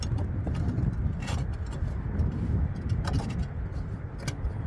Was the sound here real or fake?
real